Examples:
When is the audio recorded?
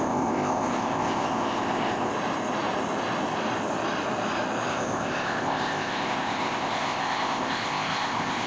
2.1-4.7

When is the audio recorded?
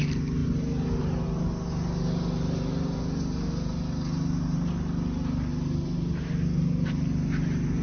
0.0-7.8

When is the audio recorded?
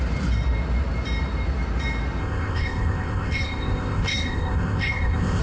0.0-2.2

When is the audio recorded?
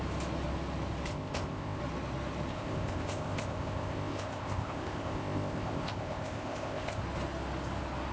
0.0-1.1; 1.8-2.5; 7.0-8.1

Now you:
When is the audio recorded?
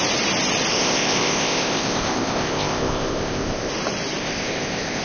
0.0-0.7; 3.7-4.2